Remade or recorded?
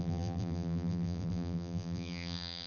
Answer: remade